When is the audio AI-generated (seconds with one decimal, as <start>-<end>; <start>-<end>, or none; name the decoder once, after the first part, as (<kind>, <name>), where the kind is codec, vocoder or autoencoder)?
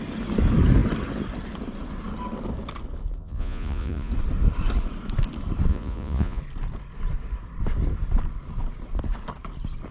3.2-4.1 (vocoder, Vocos); 5.7-6.4